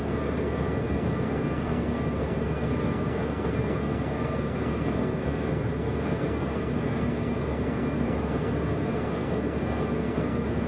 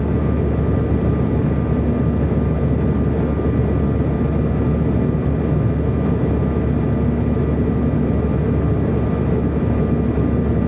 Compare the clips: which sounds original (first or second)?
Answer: second